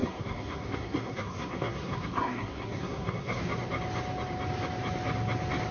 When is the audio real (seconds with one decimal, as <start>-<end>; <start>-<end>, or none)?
3.4-5.7